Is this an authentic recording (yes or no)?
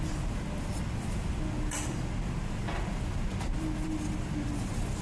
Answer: yes